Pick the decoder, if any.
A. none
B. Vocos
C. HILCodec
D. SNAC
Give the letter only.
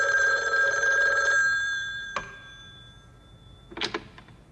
A